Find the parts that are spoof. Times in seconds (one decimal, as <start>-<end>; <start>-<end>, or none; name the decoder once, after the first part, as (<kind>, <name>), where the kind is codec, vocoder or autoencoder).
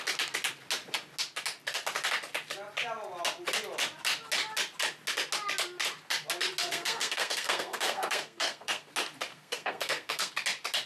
6.6-8.9 (codec, SNAC); 9.3-10.3